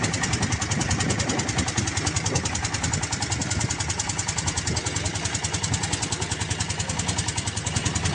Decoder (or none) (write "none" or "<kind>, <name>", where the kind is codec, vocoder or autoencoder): none